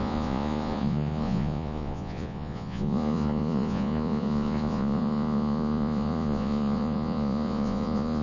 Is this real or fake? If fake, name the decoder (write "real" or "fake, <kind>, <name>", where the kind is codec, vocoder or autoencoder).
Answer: fake, vocoder, Vocos